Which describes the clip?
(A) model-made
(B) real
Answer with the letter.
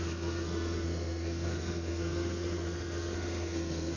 A